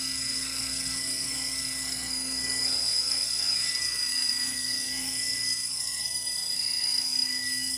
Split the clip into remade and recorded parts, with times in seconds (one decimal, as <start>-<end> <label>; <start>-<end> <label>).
0.0-7.8 remade